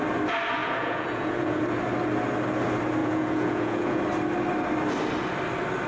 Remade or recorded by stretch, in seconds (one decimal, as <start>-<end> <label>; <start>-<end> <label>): 0.0-0.6 recorded; 0.6-1.6 remade; 1.6-3.0 recorded; 3.0-4.0 remade; 4.0-5.9 recorded